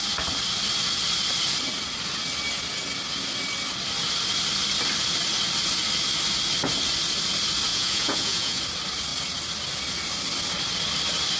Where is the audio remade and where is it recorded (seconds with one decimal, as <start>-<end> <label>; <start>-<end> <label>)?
0.0-7.7 recorded; 7.7-8.6 remade; 8.6-11.4 recorded